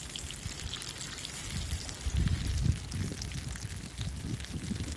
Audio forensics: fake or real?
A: real